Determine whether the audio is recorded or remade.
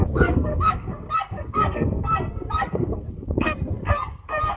remade